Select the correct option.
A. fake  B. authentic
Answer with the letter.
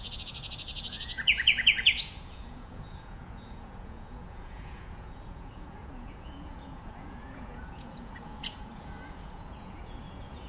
A